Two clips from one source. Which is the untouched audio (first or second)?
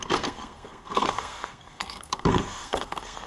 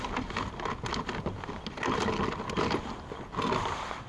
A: second